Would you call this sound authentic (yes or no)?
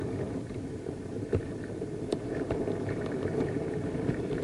no